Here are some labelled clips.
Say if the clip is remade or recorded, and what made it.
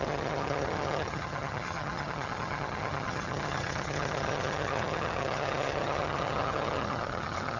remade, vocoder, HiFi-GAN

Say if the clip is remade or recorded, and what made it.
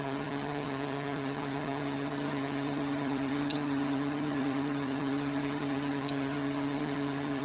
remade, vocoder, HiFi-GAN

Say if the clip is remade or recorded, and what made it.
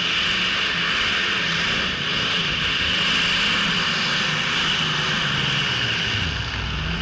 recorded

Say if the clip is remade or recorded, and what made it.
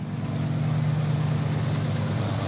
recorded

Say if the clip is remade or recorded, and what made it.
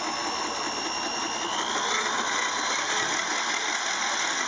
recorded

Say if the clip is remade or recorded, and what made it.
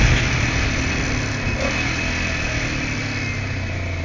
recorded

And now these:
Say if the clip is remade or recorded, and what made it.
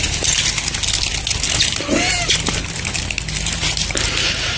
recorded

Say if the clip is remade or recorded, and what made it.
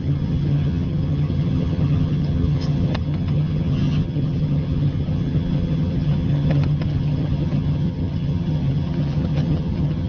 remade, vocoder, HiFi-GAN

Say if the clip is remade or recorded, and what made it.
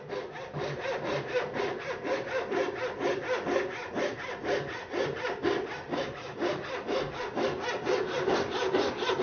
recorded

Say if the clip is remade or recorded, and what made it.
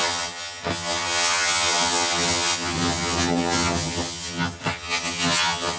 remade, vocoder, HiFi-GAN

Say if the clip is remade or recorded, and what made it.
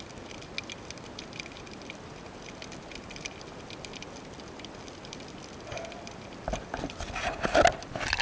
recorded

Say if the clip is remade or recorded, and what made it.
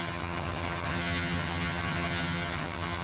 remade, vocoder, HiFi-GAN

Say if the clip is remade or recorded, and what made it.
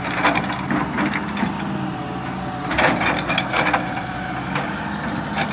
recorded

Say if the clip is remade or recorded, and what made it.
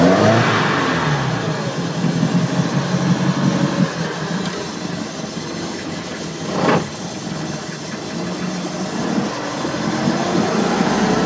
recorded